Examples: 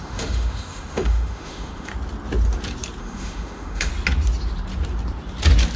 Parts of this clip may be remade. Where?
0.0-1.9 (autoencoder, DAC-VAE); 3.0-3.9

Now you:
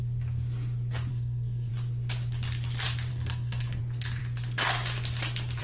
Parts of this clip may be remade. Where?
1.1-1.7 (codec, SNAC); 3.1-3.8

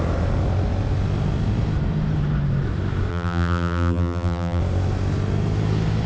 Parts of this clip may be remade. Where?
3.1-4.6 (vocoder, BigVGAN v2)

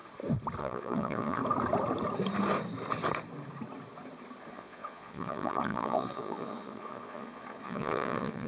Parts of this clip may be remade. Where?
0.6-1.4 (vocoder, Vocos); 4.5-8.5

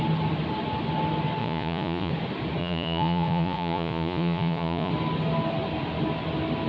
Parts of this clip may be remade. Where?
1.4-2.1 (vocoder, Vocos); 2.6-4.9

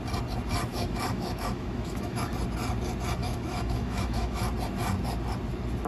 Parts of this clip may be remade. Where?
0.7-2.3 (autoencoder, DAC-VAE); 3.2-4.4

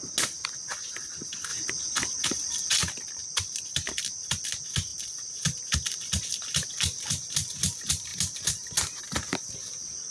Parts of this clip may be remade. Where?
none